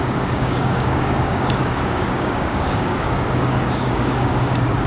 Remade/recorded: remade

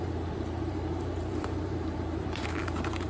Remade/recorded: remade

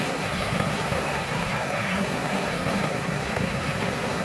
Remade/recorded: remade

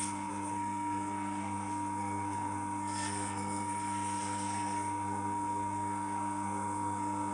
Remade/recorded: remade